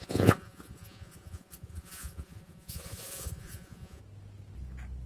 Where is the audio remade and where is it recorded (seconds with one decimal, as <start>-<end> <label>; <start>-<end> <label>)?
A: 0.0-4.0 remade; 4.0-5.1 recorded

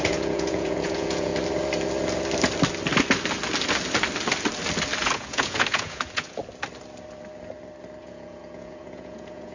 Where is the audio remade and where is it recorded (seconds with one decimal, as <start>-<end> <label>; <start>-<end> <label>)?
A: 0.0-1.3 remade; 1.3-5.0 recorded; 5.0-6.4 remade; 6.4-8.0 recorded; 8.0-9.5 remade

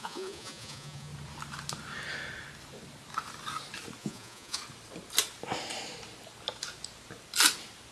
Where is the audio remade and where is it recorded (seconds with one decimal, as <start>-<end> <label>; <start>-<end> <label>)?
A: 0.0-1.1 remade; 1.1-4.0 recorded; 4.0-4.6 remade; 4.6-7.9 recorded

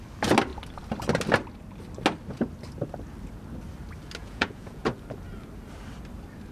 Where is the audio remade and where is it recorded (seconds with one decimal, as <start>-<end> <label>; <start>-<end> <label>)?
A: 0.0-4.2 recorded; 4.2-4.8 remade; 4.8-6.5 recorded

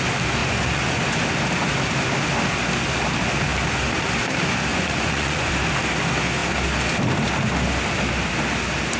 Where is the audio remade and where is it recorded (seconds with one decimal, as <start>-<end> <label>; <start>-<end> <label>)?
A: 0.0-0.4 recorded; 0.4-1.0 remade; 1.0-4.7 recorded; 4.7-5.5 remade; 5.5-9.0 recorded